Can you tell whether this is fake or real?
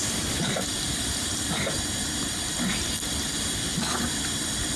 real